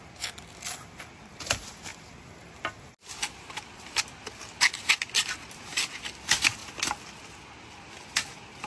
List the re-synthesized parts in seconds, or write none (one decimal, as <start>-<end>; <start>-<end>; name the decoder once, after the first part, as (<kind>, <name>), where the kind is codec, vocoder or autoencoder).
none